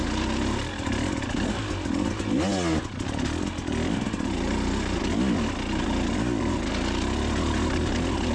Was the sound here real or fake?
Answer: real